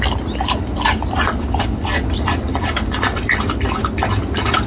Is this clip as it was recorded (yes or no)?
yes